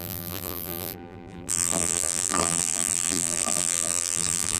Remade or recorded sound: remade